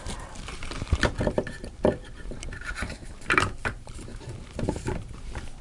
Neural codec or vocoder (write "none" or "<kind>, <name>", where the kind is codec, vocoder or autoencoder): vocoder, BigVGAN v2